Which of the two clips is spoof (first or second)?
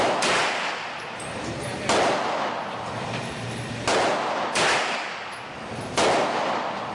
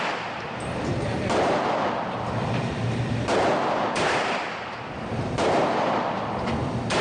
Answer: second